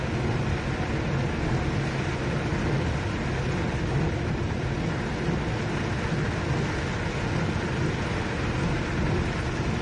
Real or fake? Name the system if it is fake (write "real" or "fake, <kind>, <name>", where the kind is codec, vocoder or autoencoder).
real